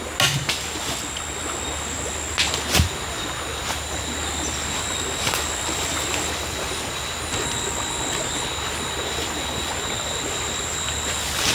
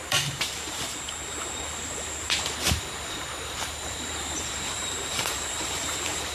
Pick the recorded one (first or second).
first